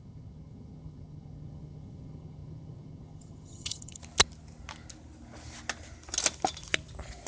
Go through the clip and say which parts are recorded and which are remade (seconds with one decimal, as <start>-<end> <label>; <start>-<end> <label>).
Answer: 0.0-4.0 remade; 4.0-7.3 recorded